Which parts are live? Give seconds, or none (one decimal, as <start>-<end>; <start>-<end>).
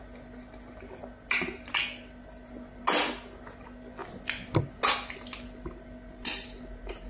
0.0-7.1